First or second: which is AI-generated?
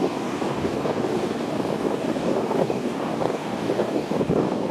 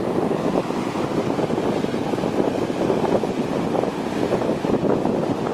first